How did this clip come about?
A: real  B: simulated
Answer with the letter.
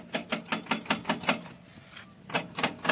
A